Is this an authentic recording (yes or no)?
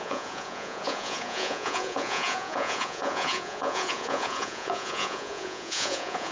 no